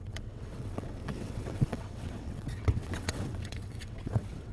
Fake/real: fake